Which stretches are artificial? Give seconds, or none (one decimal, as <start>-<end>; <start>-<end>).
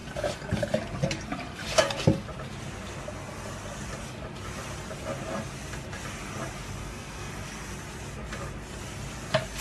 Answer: 6.8-7.3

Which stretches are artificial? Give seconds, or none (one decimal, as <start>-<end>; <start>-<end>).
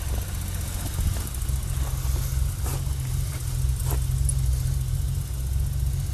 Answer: none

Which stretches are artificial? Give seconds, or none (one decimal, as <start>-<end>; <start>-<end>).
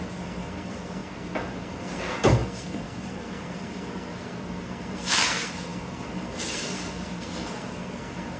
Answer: 0.0-8.4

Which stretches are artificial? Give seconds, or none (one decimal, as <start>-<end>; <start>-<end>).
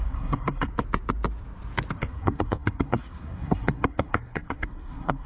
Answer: 0.0-0.7; 1.9-5.3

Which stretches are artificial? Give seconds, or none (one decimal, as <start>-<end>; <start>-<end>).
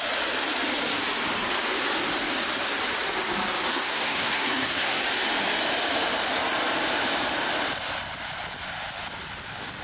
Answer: 3.7-5.0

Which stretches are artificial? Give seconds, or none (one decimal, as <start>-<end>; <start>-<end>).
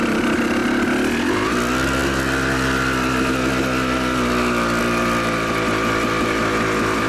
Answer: none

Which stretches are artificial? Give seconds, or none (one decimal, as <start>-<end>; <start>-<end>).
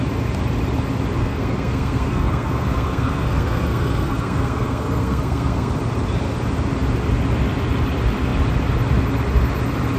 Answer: 1.2-5.7